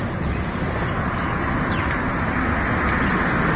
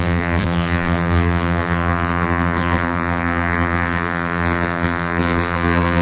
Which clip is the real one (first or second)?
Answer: first